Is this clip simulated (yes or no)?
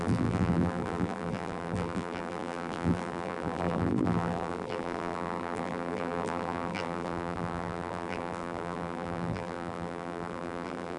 yes